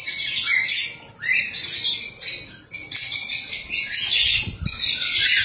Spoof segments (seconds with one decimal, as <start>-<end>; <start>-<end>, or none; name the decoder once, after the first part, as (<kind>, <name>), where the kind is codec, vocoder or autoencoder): none